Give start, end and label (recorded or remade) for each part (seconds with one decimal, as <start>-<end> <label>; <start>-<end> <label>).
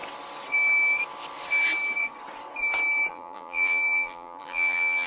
0.0-3.1 recorded; 3.1-5.1 remade